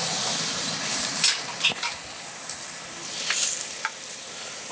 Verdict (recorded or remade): recorded